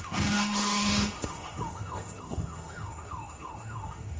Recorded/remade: remade